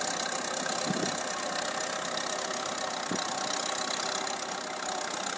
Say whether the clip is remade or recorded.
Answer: recorded